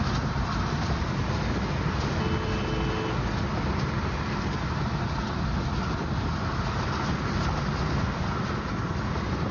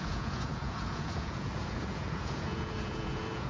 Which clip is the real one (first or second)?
first